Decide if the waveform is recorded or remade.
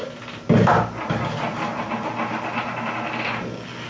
recorded